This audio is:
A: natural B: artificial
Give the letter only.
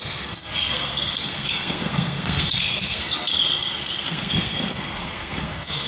B